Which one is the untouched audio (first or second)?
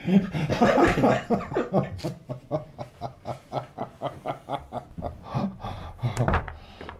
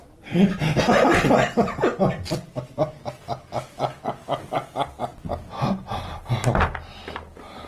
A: second